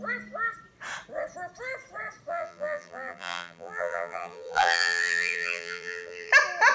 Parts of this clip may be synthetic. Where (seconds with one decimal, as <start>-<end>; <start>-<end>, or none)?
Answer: 2.3-6.3